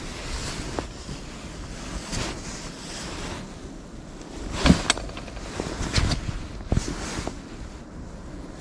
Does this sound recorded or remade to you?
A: recorded